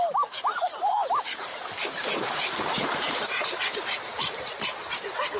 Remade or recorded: remade